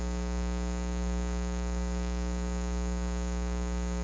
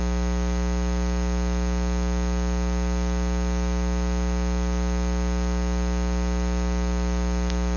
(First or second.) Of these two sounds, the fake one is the first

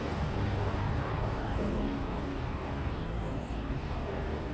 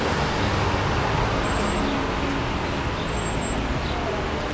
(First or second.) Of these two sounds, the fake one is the first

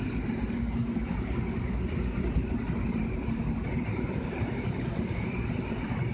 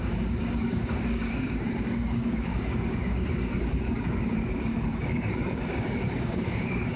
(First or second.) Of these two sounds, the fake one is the second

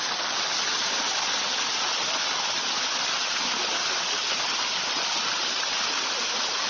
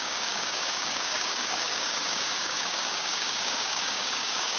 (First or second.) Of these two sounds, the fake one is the second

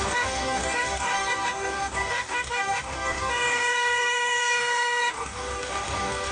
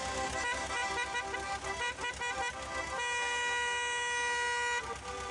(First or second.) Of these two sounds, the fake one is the first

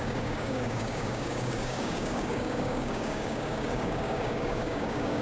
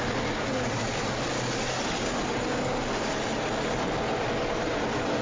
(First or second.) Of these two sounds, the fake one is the first